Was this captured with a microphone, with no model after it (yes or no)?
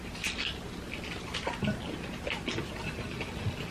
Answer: yes